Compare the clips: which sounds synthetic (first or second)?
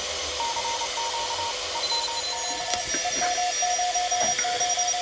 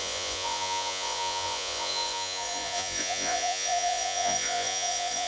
second